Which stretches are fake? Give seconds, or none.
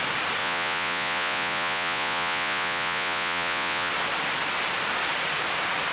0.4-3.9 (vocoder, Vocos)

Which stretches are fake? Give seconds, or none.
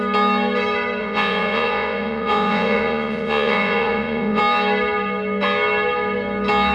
1.0-4.4 (vocoder, Vocos)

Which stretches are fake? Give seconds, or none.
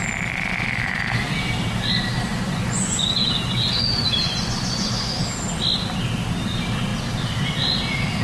2.3-5.2 (vocoder, Vocos)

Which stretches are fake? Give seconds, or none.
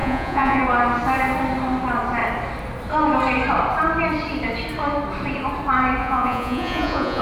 0.0-0.6 (vocoder, Vocos); 6.0-7.2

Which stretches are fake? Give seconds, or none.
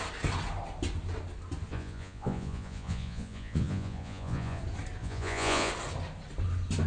1.7-4.6 (vocoder, Vocos); 5.0-5.7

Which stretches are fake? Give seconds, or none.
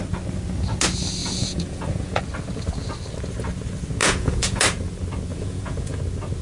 1.2-2.2 (vocoder, Vocos); 4.0-4.6; 5.3-6.0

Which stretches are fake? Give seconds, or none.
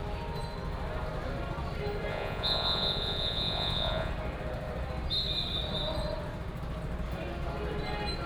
2.1-4.1 (vocoder, Vocos)